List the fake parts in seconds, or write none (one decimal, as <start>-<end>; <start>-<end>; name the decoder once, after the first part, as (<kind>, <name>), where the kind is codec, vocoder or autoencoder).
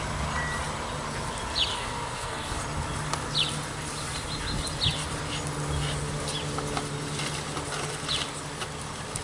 1.7-2.6 (codec, SNAC)